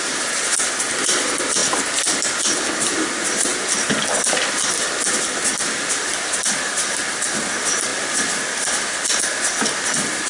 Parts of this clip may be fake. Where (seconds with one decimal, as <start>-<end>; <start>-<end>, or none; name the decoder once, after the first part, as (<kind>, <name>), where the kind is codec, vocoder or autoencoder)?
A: 0.0-1.6 (vocoder, BigVGAN v2); 2.8-5.5; 6.7-7.9; 9.2-10.3